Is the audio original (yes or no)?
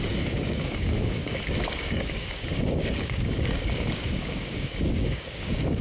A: no